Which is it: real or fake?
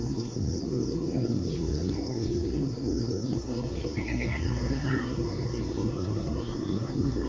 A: fake